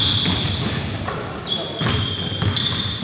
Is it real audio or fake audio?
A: real